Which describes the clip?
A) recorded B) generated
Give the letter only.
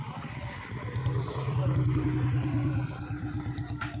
B